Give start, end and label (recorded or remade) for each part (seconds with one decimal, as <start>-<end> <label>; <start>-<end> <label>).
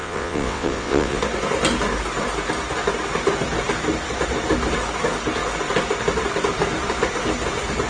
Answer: 0.0-1.2 remade; 1.2-7.9 recorded